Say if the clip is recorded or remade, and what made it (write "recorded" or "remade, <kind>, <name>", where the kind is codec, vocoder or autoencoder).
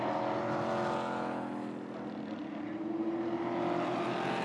recorded